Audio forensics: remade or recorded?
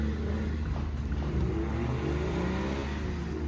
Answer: recorded